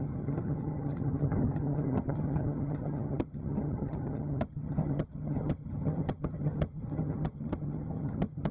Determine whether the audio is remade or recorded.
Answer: remade